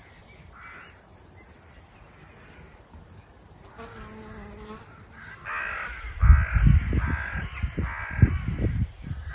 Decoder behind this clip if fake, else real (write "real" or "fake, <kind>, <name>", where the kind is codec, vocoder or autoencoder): real